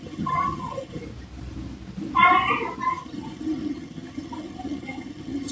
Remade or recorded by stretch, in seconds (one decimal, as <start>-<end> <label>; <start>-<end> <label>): 0.0-1.0 remade; 1.0-2.9 recorded; 2.9-5.5 remade